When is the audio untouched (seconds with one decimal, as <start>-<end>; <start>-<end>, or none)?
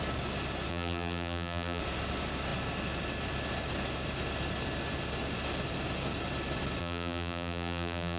0.0-0.7; 1.8-6.8